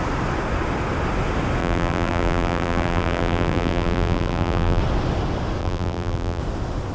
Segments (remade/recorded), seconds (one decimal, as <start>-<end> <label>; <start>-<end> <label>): 0.0-1.6 recorded; 1.6-4.8 remade; 4.8-5.6 recorded; 5.6-6.4 remade; 6.4-6.9 recorded